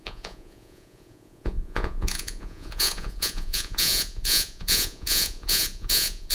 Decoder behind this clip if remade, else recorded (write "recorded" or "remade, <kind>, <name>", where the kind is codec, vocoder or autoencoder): remade, vocoder, Vocos